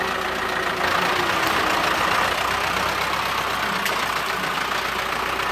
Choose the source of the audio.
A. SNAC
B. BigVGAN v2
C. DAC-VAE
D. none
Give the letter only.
D